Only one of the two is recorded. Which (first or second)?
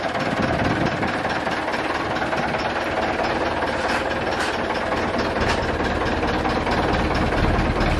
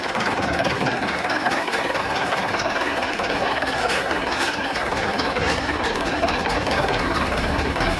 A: first